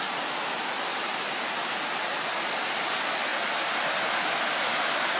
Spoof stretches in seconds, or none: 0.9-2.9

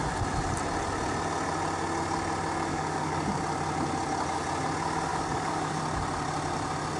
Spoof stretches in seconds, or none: 2.7-3.4; 5.1-5.7

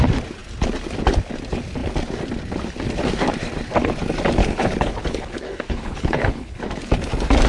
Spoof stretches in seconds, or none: 4.4-6.6

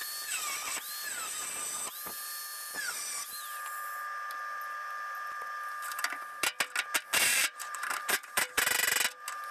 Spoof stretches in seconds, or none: 7.3-8.5